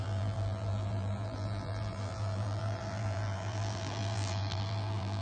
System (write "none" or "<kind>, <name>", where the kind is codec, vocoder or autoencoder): vocoder, BigVGAN v2